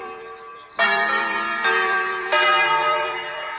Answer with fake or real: fake